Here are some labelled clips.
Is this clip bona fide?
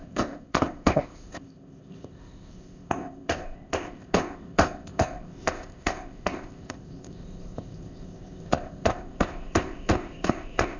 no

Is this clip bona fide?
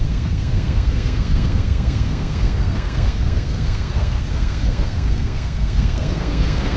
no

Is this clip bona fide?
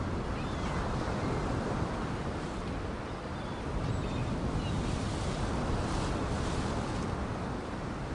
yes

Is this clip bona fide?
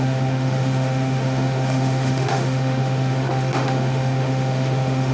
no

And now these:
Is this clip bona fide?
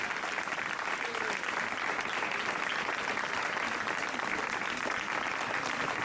yes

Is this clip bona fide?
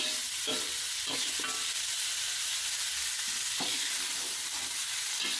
yes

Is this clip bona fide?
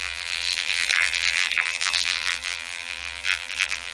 no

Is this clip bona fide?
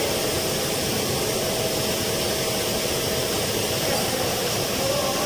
yes